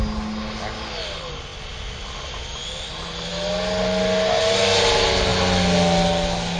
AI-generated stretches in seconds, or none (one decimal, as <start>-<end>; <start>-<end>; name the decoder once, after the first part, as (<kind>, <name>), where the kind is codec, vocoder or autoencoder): none